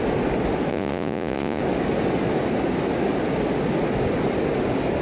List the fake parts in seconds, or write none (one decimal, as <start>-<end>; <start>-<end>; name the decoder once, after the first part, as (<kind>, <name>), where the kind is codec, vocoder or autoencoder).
0.7-1.6 (vocoder, Vocos)